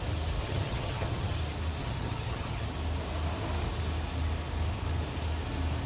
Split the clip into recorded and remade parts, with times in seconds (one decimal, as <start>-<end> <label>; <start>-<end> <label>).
0.0-0.4 recorded; 0.4-1.4 remade; 1.4-1.8 recorded; 1.8-2.7 remade; 2.7-5.9 recorded